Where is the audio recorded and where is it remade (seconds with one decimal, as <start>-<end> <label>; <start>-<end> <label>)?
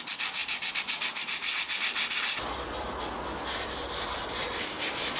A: 0.0-5.2 recorded